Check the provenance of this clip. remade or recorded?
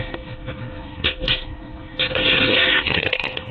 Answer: remade